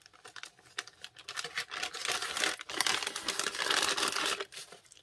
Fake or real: real